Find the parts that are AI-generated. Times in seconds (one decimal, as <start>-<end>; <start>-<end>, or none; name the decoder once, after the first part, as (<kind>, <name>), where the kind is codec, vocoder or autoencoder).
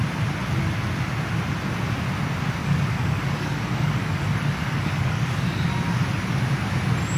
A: 2.6-5.7 (codec, DAC)